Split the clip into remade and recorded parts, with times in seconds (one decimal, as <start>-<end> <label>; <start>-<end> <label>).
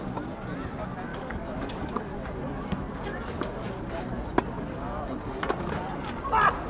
0.0-1.1 recorded; 1.1-1.8 remade; 1.8-3.1 recorded; 3.1-3.6 remade; 3.6-6.7 recorded